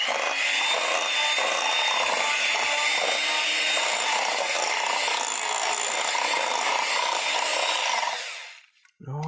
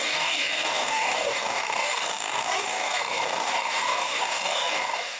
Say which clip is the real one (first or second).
first